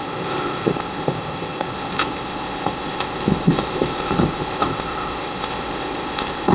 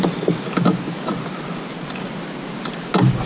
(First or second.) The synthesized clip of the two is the first